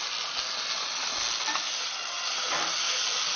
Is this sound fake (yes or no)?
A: no